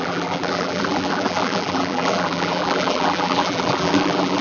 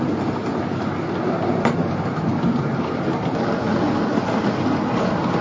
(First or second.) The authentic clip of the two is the second